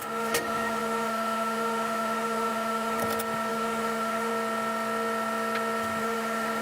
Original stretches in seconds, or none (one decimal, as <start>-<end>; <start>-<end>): 3.0-3.5; 4.3-6.0